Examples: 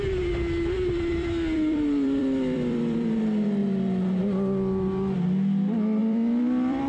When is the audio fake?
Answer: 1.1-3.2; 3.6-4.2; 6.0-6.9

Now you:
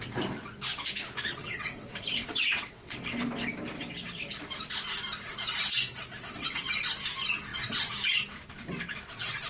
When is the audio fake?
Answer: 1.4-3.0; 6.1-6.7

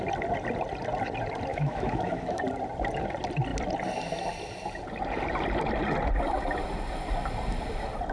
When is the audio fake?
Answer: 1.5-2.4

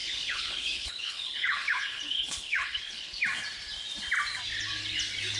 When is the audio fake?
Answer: 0.0-3.2

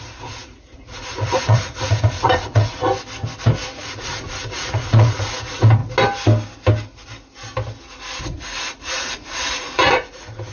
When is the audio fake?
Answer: 0.0-2.8; 3.8-5.8; 8.2-10.5

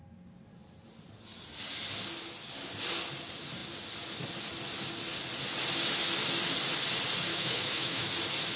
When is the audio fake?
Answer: 7.3-8.1